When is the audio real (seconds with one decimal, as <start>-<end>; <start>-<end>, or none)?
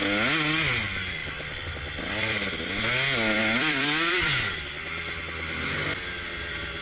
0.0-1.2; 2.8-3.4; 5.2-6.8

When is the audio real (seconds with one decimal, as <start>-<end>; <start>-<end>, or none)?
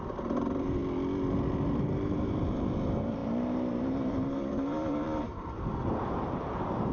0.8-1.8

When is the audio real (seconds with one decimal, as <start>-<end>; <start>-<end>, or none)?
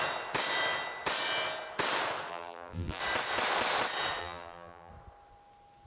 0.0-2.3; 3.0-4.2; 4.9-5.9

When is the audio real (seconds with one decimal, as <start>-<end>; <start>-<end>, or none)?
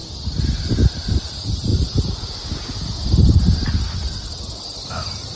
0.0-1.1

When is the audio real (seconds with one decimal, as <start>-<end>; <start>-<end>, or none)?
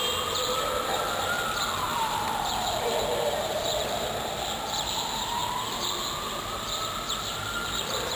none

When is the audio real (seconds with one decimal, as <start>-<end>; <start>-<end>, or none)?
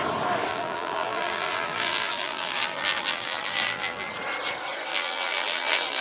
0.0-0.5; 4.1-4.9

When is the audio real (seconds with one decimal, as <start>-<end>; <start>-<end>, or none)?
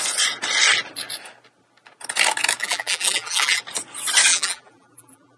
0.0-2.6; 3.6-4.3